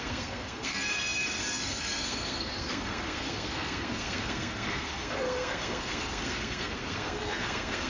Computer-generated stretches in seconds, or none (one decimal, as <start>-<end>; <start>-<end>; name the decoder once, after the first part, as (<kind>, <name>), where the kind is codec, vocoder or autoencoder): 0.0-7.9 (codec, SNAC)